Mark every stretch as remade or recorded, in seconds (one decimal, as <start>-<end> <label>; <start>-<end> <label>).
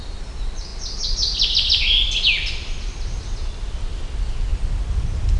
0.0-5.4 recorded